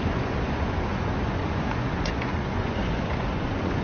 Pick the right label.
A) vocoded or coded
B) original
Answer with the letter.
A